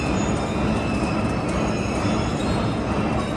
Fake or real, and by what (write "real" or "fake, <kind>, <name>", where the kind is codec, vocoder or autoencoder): real